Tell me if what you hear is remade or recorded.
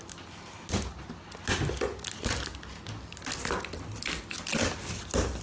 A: recorded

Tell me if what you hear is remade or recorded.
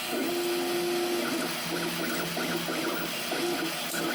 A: recorded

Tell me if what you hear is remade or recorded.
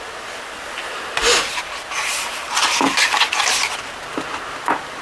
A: recorded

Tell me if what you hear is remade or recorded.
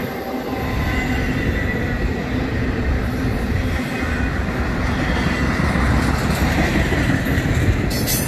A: recorded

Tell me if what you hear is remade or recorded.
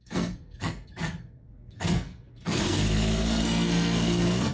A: remade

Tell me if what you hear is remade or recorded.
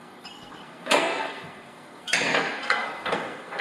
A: remade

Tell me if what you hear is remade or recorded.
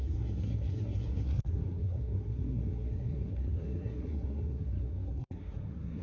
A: remade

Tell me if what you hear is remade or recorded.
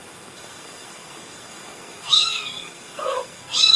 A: remade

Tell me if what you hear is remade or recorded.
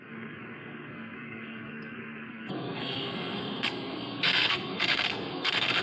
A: remade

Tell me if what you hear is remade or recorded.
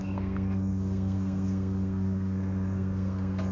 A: remade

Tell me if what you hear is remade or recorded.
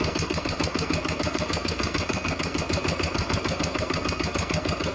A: remade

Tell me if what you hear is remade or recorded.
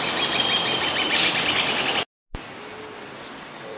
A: recorded